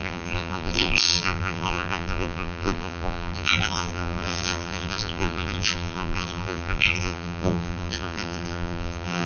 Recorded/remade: remade